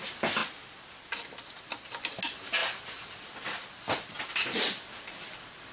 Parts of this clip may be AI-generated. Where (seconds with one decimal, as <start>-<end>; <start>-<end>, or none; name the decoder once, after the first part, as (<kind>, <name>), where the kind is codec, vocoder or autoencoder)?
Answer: 0.4-2.0 (vocoder, BigVGAN v2); 2.6-4.8